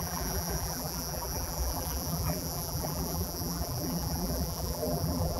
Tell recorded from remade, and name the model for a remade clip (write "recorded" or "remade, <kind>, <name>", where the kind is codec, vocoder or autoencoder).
remade, vocoder, BigVGAN v2